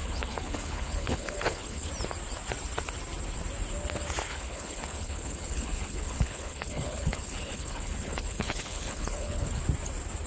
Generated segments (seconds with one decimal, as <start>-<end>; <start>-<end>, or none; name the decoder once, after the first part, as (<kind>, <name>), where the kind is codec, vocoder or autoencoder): 0.0-1.9 (codec, HILCodec); 4.3-9.6